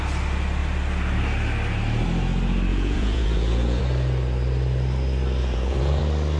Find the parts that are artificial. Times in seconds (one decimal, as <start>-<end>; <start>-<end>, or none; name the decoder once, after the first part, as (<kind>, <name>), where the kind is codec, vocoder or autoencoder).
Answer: 2.7-3.8 (vocoder, Vocos); 5.4-6.0